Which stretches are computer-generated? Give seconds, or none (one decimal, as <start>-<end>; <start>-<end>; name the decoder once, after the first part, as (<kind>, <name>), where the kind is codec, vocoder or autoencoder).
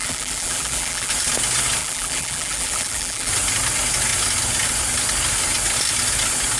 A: 0.0-1.1 (vocoder, BigVGAN v2); 1.8-3.3